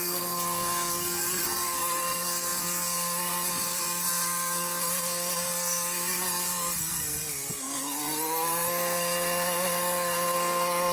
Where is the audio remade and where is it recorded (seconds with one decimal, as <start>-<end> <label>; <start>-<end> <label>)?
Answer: 0.0-10.9 remade